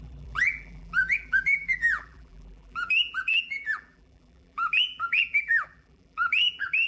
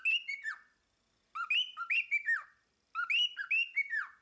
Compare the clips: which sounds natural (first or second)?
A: second